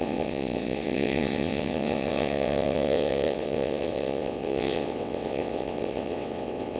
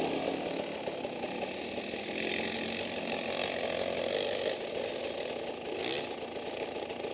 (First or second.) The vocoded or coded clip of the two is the first